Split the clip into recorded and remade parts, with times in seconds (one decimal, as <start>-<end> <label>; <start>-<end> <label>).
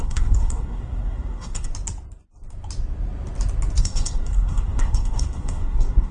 0.0-1.7 remade; 1.7-3.8 recorded; 3.8-6.1 remade